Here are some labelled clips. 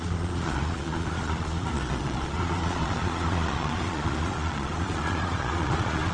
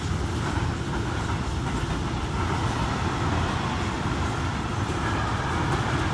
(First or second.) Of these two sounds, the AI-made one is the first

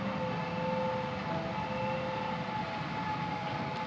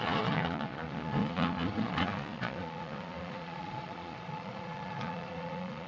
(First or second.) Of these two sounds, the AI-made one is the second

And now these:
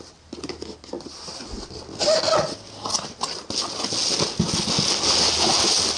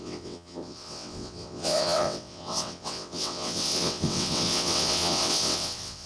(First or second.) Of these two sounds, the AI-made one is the second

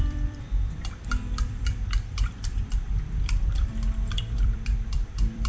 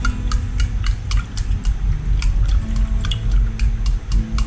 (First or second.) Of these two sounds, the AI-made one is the first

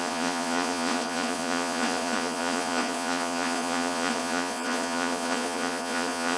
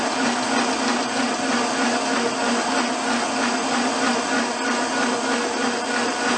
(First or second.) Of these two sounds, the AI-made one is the first